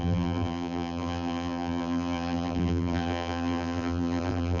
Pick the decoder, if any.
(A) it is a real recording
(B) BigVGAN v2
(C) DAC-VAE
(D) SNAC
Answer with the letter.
B